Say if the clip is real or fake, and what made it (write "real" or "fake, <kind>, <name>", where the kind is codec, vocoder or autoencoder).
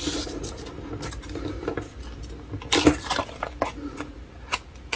real